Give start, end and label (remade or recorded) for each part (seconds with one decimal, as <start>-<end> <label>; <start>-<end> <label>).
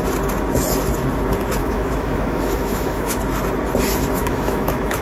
0.0-1.6 recorded; 1.6-3.2 remade; 3.2-4.2 recorded; 4.2-5.0 remade